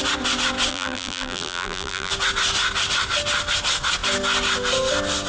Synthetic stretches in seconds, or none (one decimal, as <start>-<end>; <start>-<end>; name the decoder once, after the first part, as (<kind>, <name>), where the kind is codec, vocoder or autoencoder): 0.7-2.1 (vocoder, BigVGAN v2)